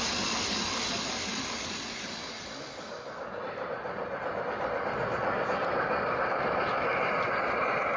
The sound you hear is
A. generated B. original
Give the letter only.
B